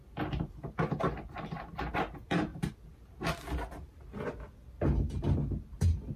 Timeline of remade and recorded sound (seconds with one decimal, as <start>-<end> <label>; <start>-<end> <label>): 0.0-6.2 recorded